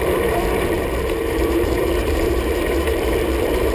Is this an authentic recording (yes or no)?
no